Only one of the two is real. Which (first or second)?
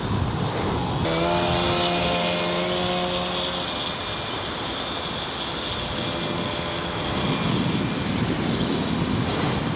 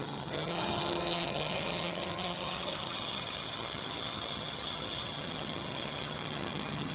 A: first